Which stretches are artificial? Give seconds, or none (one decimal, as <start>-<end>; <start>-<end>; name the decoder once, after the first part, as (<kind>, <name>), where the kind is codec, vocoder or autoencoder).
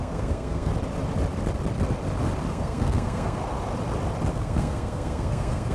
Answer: 0.0-0.7 (codec, SNAC); 2.5-3.4; 4.3-5.7